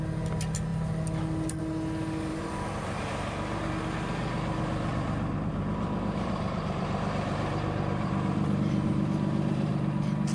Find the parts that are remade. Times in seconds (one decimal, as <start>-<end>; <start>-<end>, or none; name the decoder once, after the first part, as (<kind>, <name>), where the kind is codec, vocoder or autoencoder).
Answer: 2.3-3.7 (vocoder, BigVGAN v2); 4.9-9.7